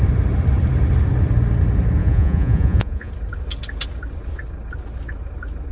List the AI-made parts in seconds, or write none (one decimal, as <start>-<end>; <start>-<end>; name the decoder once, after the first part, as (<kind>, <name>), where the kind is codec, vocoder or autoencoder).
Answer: 2.0-3.1 (vocoder, Vocos)